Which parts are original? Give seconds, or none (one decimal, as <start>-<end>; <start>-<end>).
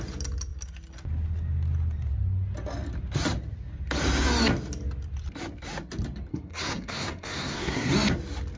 0.0-6.3; 7.9-8.6